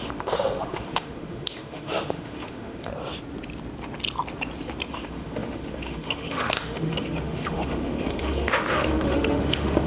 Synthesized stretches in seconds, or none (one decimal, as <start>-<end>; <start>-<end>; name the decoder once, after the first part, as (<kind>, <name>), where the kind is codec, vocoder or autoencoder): 0.0-2.9 (autoencoder, DAC-VAE); 4.9-9.9